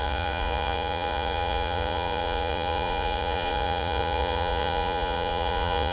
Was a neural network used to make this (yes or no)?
yes